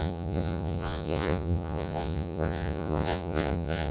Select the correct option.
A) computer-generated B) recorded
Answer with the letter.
A